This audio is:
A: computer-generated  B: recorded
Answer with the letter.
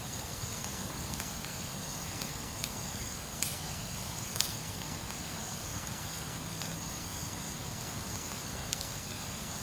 A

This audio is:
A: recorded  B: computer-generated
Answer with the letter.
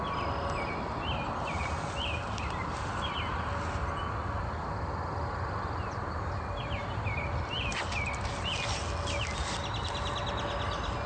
A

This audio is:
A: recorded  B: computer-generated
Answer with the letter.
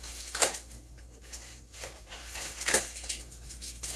B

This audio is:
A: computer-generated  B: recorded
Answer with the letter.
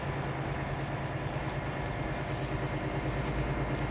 B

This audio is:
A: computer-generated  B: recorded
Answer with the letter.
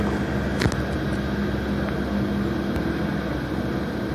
B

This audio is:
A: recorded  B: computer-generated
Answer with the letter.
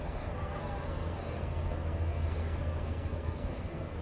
B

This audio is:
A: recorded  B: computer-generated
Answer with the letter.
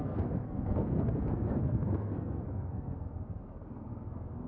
B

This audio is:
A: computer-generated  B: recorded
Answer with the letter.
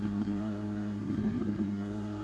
A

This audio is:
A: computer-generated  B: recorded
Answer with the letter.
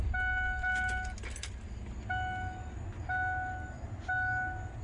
B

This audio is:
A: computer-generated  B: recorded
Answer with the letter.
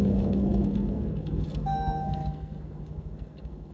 A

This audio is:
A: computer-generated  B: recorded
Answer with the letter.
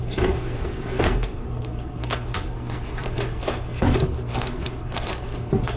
A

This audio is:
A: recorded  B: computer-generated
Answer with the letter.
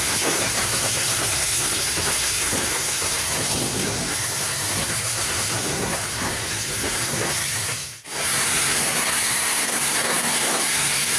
B